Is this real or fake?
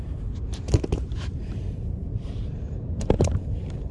fake